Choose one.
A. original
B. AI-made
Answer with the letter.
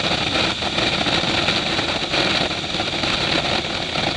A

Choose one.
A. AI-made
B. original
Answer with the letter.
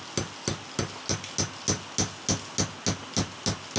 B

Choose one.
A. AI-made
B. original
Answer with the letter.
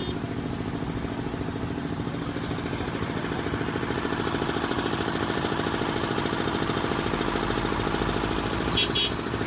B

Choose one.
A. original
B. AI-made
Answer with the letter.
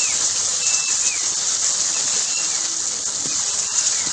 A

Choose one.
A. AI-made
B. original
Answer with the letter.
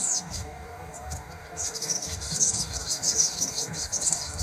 A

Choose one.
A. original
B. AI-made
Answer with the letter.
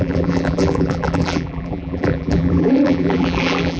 B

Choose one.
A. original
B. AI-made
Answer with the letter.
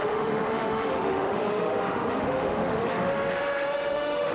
B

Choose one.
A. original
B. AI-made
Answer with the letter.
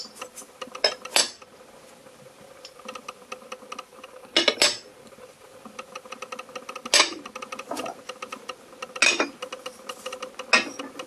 A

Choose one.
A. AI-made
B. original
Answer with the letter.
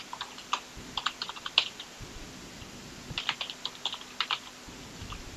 A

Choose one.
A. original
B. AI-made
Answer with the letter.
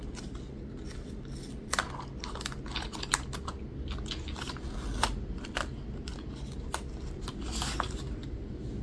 A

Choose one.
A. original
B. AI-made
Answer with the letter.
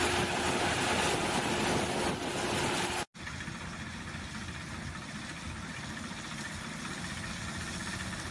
A